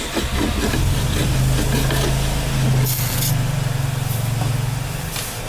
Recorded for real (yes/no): yes